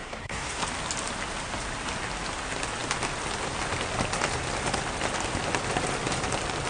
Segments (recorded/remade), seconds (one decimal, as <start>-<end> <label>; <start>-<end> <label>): 0.0-0.6 remade; 0.6-6.7 recorded